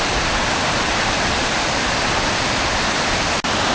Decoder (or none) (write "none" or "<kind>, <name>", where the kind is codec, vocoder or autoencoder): none